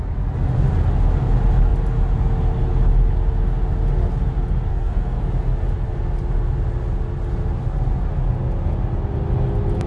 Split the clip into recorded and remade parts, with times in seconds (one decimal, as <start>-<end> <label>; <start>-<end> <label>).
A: 0.0-4.7 recorded; 4.7-5.2 remade; 5.2-9.9 recorded

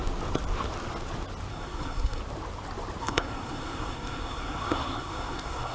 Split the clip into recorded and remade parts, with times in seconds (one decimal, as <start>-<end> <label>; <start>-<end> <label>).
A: 0.0-1.5 recorded; 1.5-2.2 remade; 2.2-3.0 recorded; 3.0-5.7 remade